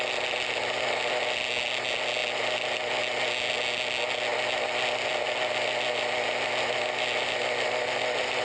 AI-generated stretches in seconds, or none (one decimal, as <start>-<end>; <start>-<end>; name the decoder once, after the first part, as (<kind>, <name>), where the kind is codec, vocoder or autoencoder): none